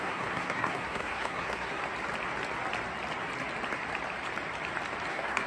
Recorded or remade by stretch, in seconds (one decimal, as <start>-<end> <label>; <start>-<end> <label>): 0.0-1.8 remade; 1.8-5.1 recorded; 5.1-5.5 remade